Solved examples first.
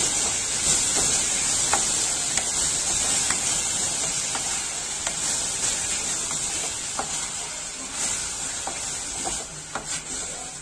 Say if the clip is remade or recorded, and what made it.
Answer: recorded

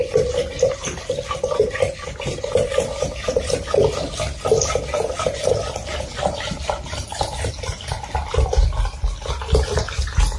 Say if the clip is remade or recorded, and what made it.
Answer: recorded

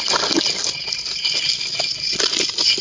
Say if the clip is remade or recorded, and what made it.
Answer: recorded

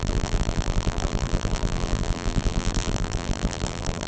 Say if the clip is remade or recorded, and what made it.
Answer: remade, vocoder, BigVGAN v2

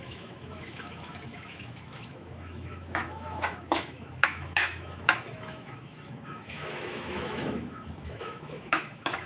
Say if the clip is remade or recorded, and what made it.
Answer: remade, autoencoder, DAC-VAE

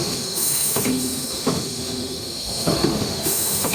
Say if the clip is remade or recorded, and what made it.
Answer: remade, autoencoder, DAC-VAE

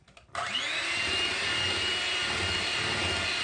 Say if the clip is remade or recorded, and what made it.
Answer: recorded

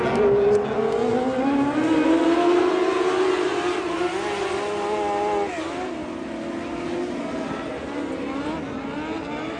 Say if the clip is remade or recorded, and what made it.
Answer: recorded